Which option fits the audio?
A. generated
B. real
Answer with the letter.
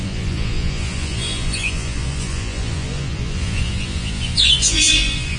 A